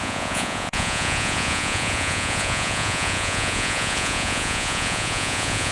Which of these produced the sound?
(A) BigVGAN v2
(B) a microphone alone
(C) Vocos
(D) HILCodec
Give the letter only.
C